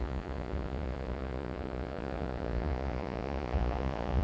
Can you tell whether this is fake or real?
fake